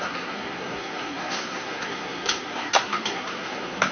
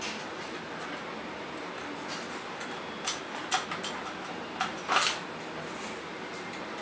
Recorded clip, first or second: second